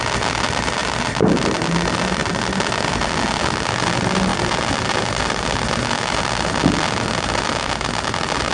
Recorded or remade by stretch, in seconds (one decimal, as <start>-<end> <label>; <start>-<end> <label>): 0.0-8.5 recorded